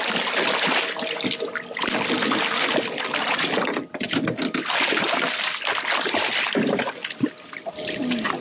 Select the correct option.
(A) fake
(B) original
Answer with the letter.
B